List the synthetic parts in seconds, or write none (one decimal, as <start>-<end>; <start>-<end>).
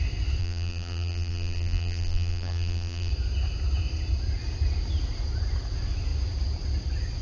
0.4-3.1